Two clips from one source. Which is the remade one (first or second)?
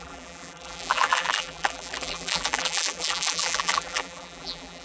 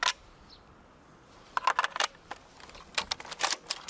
first